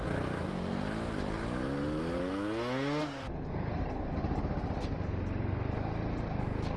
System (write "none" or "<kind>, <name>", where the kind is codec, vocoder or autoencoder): none